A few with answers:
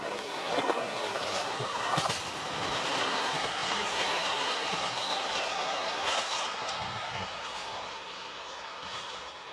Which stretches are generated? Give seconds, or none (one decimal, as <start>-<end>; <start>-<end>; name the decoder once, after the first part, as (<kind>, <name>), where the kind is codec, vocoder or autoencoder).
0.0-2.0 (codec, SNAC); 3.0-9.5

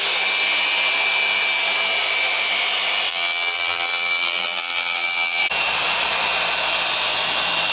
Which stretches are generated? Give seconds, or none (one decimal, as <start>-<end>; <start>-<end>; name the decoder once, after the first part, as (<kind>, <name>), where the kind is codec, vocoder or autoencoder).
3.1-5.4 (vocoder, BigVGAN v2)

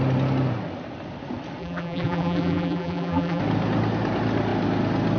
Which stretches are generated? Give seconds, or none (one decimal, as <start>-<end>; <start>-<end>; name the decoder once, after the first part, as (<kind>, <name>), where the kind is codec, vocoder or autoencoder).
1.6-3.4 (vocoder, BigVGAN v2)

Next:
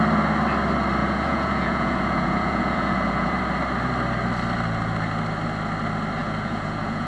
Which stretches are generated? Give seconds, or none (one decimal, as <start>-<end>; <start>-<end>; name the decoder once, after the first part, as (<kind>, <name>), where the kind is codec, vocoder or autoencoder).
1.0-3.4 (vocoder, Vocos); 6.2-7.1